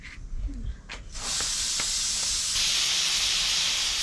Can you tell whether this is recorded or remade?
recorded